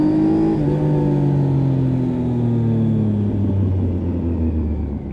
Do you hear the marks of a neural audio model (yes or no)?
no